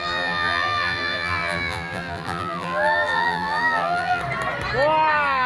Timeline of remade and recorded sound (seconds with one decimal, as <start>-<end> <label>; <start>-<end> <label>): 0.0-4.2 remade; 4.2-5.1 recorded; 5.1-5.5 remade